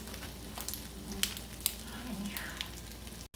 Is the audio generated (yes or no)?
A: no